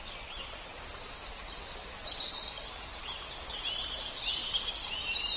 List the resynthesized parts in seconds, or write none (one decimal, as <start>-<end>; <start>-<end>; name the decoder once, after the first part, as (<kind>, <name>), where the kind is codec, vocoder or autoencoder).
2.0-2.7 (vocoder, BigVGAN v2)